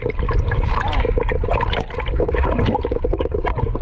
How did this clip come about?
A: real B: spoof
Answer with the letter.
B